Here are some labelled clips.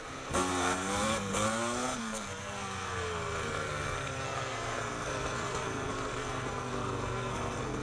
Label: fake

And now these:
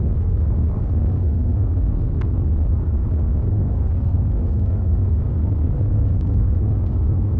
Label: fake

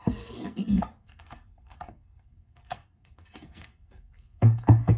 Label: fake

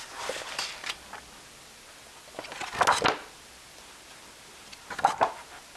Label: real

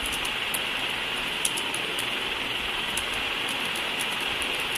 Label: real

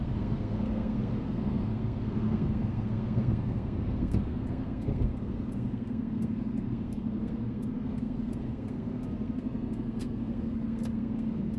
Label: fake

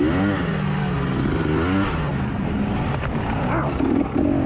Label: real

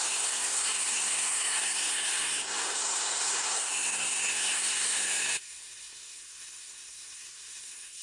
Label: fake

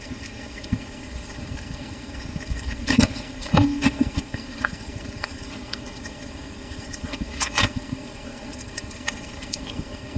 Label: fake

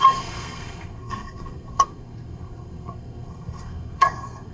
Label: fake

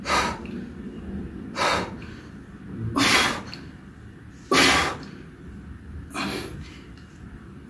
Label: real